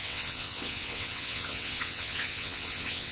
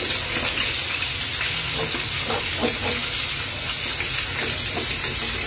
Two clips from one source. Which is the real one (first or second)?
second